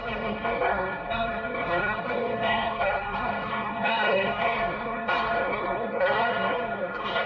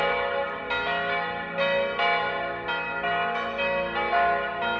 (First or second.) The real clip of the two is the second